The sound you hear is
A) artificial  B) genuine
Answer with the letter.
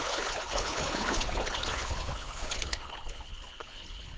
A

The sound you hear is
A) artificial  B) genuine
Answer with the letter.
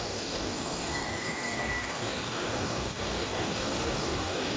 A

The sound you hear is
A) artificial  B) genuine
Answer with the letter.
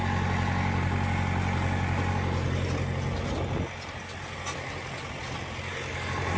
B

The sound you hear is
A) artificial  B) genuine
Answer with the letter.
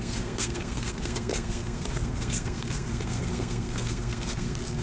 A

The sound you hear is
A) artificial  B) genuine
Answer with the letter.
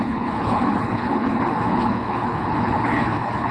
A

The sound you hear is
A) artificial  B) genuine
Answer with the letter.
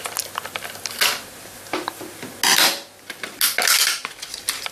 B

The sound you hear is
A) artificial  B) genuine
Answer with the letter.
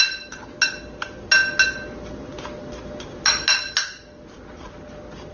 B